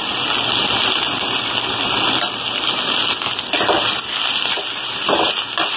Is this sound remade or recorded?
recorded